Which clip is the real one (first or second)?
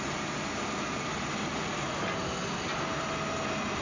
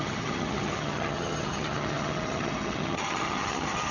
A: first